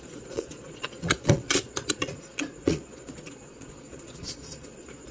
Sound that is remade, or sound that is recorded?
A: remade